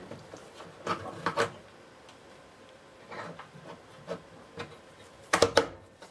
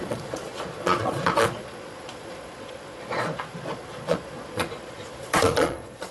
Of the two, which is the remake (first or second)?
second